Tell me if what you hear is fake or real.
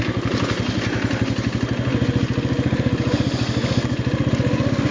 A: real